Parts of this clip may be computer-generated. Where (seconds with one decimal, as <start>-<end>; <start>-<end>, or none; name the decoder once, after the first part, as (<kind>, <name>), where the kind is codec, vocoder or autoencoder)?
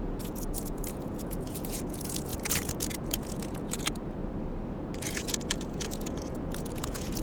0.0-4.2 (vocoder, Vocos); 4.8-7.2